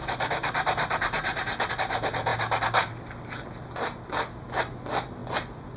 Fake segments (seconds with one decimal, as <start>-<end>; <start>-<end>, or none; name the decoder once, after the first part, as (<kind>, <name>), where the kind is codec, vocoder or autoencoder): none